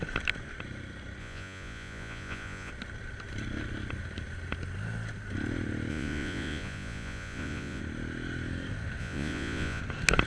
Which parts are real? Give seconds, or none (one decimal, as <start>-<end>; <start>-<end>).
0.0-1.2; 2.7-5.9; 7.8-9.0; 9.8-10.3